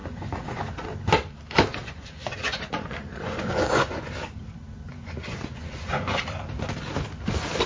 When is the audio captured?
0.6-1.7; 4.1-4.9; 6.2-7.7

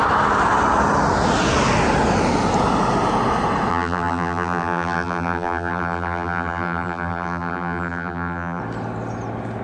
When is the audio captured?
0.0-3.7; 8.6-9.6

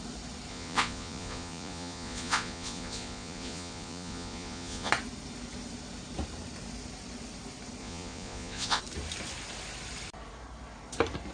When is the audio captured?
0.0-0.5; 4.9-7.8; 8.8-11.3

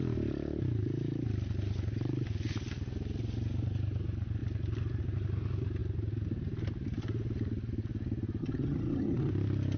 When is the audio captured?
0.0-8.4; 9.3-9.8

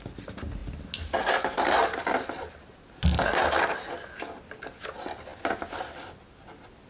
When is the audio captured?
0.0-6.9